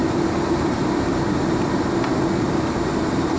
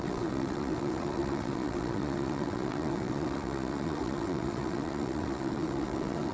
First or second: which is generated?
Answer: second